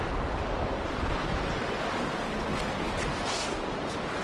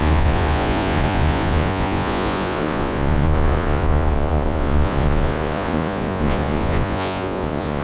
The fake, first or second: second